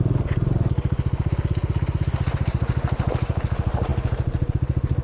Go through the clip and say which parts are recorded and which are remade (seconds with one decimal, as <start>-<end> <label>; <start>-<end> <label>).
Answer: 0.0-1.6 recorded; 1.6-3.4 remade; 3.4-5.0 recorded